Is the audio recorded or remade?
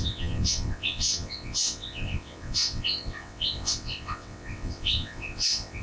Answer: remade